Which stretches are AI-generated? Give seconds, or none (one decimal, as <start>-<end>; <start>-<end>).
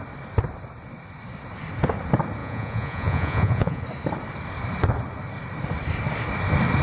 2.4-3.8